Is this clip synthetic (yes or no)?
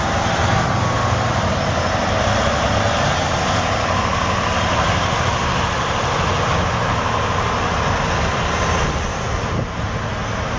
no